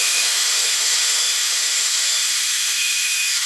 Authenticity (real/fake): fake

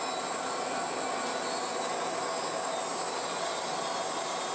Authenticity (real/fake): real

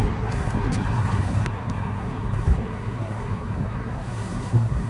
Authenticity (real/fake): fake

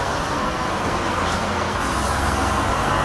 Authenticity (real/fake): fake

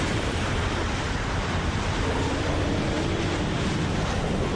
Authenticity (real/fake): real